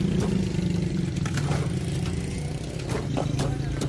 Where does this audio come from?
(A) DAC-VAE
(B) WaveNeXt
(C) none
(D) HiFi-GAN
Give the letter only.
C